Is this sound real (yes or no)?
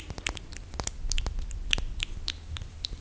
yes